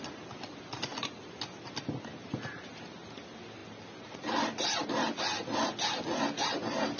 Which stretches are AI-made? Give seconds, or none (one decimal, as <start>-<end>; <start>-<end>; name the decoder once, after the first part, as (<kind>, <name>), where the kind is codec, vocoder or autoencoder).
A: none